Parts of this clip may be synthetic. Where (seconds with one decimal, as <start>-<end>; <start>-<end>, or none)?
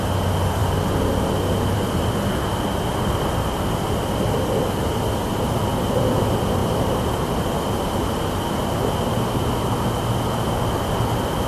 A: none